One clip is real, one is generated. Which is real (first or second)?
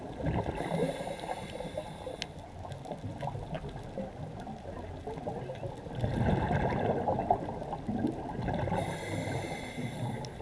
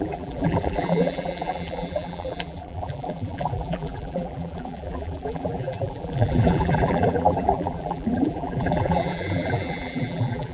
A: first